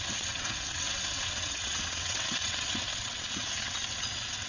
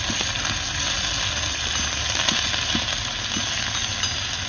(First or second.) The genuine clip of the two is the second